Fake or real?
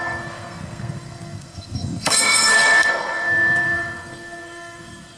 fake